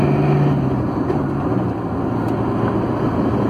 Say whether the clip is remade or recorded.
recorded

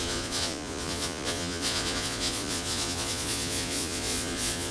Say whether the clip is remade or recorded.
remade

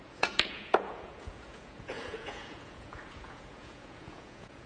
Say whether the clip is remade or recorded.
remade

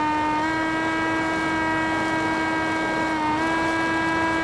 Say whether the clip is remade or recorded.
recorded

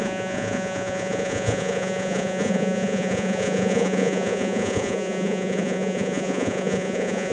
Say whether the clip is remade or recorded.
remade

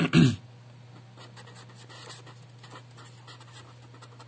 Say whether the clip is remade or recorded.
recorded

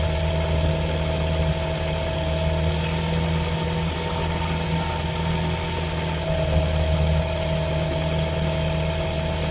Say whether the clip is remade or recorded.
recorded